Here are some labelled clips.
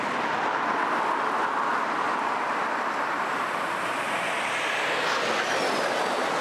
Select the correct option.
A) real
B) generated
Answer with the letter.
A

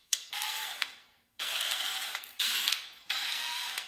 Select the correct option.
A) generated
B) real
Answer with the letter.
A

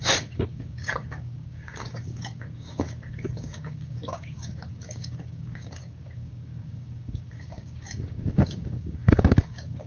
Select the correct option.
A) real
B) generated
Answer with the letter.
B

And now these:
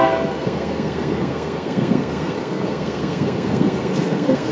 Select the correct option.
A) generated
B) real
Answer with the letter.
A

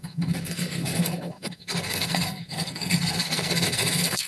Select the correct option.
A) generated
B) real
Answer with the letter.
A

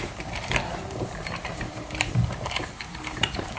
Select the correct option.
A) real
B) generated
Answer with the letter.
B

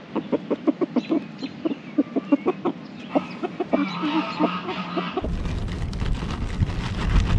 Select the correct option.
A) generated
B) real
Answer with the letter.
B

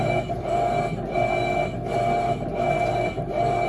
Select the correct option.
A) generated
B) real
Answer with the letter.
B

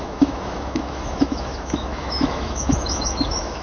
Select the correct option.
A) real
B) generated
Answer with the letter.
B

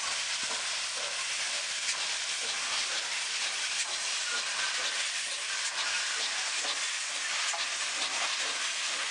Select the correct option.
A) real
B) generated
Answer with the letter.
A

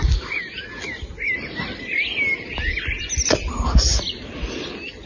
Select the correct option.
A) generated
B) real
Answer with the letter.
B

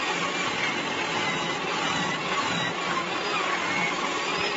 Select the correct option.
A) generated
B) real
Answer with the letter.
B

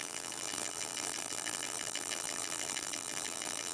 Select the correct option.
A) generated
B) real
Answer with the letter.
A